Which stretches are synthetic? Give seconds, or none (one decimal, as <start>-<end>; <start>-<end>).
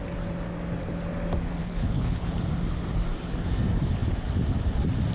1.6-2.3